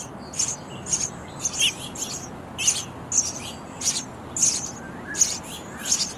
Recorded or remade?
recorded